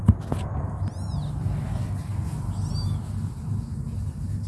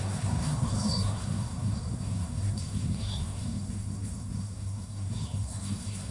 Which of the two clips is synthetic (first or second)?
second